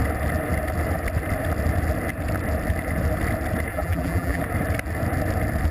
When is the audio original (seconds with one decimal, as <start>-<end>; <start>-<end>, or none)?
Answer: 0.0-3.7; 4.4-5.7